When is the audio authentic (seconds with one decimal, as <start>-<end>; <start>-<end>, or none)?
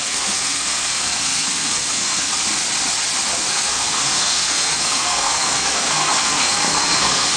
2.3-3.5